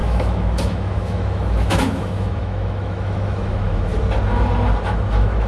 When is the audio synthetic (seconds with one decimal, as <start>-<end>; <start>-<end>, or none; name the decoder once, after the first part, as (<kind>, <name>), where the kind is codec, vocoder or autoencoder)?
0.0-3.9 (autoencoder, DAC-VAE); 5.1-5.5